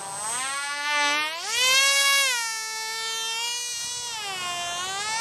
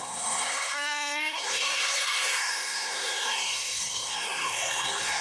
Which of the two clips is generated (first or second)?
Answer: second